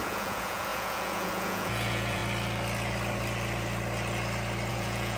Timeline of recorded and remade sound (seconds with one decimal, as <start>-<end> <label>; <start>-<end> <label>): 0.0-2.2 remade; 2.2-4.7 recorded; 4.7-5.2 remade